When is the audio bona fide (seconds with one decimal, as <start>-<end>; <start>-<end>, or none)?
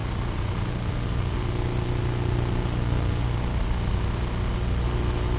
0.0-5.4